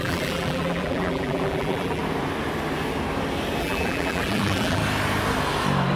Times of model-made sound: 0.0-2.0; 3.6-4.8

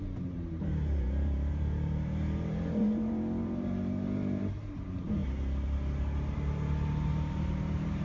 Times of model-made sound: 0.0-5.2; 7.3-8.0

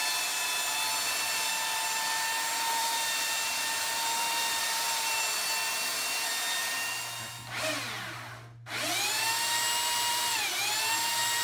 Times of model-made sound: 2.8-5.2; 10.1-10.6

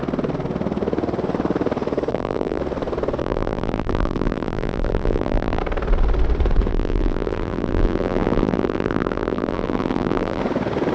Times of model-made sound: 2.1-2.6; 3.2-5.6; 6.7-10.4

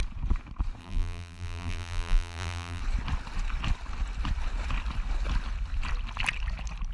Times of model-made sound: 0.8-2.8

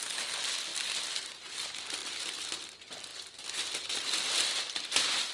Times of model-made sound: 0.7-1.3; 2.0-2.7; 3.1-3.8

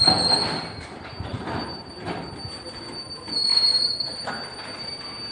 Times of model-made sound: 1.3-1.9; 3.5-4.3

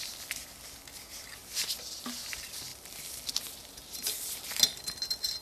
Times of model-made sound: 1.4-2.2